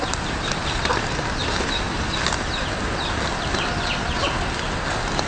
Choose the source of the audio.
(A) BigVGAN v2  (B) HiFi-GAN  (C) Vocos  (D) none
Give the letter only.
D